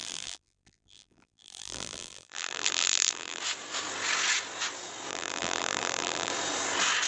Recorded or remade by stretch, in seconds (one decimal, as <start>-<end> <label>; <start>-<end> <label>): 0.0-3.4 remade; 3.4-5.1 recorded; 5.1-6.3 remade; 6.3-7.1 recorded